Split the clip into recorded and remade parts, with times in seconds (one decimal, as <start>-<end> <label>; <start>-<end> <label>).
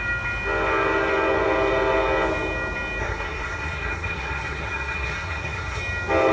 0.0-3.0 recorded; 3.0-5.8 remade; 5.8-6.3 recorded